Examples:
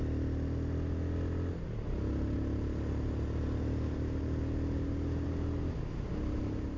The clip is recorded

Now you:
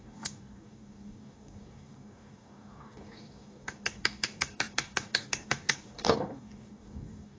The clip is remade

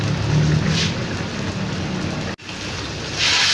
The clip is recorded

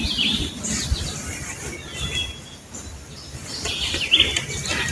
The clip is recorded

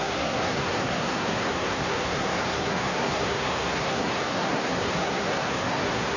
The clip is remade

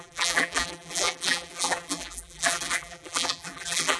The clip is remade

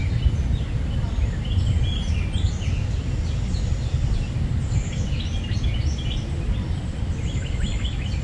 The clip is recorded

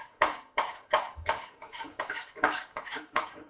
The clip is remade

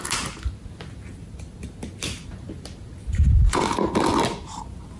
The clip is recorded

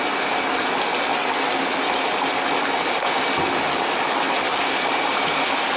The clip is recorded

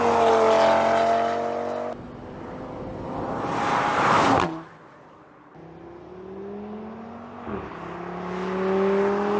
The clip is recorded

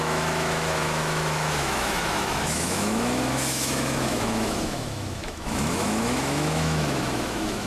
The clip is remade